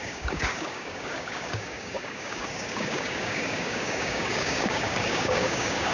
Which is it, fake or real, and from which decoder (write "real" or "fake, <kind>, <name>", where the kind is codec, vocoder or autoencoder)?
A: fake, codec, DAC